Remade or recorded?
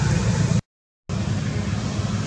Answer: recorded